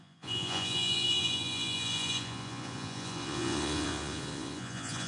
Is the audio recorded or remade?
remade